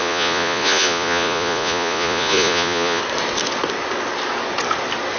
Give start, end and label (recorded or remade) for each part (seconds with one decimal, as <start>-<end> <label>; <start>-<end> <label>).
0.0-3.0 remade; 3.0-5.2 recorded